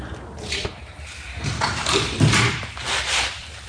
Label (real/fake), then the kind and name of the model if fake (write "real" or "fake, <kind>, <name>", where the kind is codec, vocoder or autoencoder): fake, vocoder, BigVGAN v2